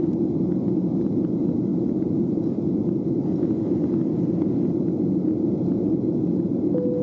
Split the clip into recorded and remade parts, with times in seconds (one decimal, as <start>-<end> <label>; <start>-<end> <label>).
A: 0.0-7.0 recorded